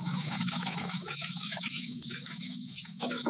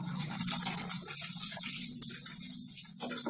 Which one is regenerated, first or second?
first